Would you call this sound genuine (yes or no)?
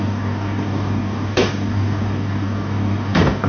no